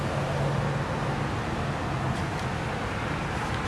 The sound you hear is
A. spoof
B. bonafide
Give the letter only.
B